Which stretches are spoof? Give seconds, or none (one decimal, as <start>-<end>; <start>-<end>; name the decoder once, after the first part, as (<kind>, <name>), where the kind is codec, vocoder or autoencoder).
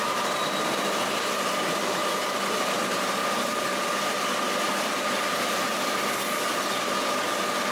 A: 3.2-6.4 (vocoder, BigVGAN v2)